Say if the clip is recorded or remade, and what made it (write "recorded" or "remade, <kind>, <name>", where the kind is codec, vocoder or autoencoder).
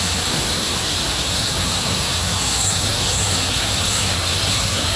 remade, codec, SNAC